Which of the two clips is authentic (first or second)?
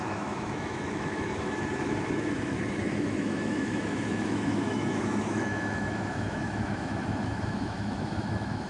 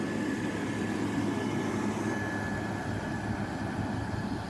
second